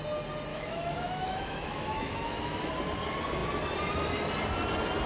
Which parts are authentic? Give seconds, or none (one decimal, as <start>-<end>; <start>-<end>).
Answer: 0.0-0.5; 2.7-5.1